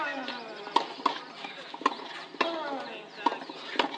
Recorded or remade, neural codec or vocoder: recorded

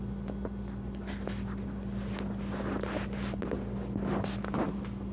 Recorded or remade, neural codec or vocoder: recorded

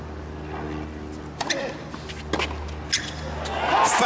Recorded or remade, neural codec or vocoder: recorded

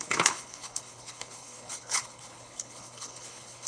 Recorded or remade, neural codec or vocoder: remade, codec, HILCodec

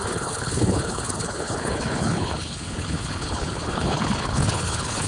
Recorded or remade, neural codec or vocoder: remade, codec, HILCodec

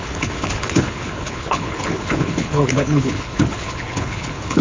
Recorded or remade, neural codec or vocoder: remade, codec, HILCodec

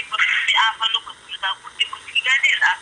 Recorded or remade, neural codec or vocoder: recorded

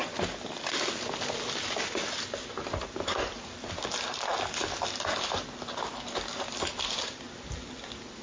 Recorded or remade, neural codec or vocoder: recorded